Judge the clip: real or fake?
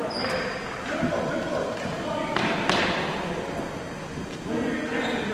fake